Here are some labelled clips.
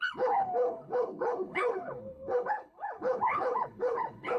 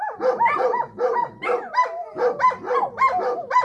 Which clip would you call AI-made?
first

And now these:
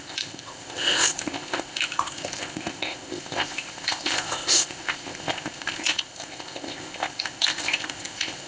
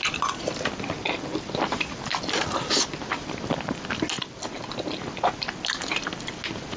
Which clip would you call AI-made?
first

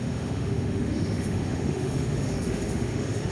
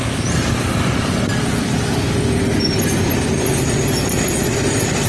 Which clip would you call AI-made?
first